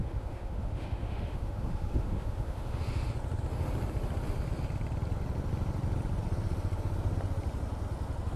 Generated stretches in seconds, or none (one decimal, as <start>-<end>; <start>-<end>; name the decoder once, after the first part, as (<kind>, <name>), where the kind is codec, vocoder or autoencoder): 0.0-2.8 (autoencoder, DAC-VAE)